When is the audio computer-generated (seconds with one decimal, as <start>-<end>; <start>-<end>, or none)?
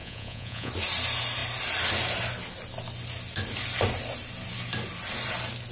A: 0.0-0.7